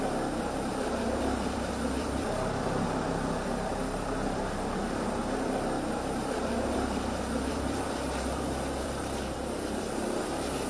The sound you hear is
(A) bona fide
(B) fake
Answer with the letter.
B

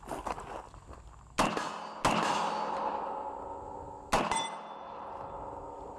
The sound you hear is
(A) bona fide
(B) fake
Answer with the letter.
A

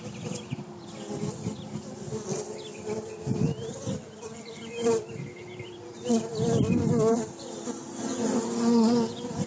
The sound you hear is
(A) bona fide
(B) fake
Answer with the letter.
A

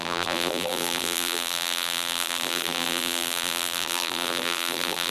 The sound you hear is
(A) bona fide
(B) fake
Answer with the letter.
B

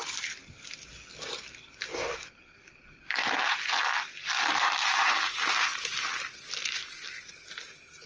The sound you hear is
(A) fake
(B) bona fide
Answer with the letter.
A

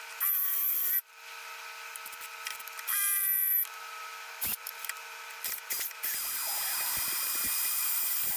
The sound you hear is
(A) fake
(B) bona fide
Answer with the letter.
A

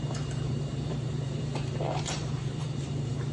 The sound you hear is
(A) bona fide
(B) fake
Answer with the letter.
B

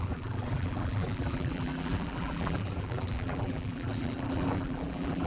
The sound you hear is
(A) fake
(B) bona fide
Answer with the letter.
A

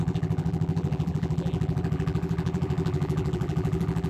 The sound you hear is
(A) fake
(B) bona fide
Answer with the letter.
A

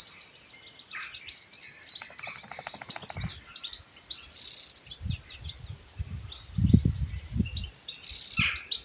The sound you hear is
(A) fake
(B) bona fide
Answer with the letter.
A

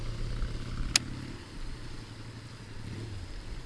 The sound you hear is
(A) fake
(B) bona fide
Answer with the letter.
B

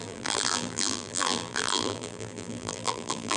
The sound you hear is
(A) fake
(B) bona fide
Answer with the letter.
A